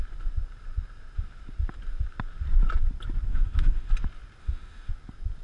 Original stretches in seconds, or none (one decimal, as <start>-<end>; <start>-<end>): 0.0-3.3; 3.9-4.4; 4.9-5.4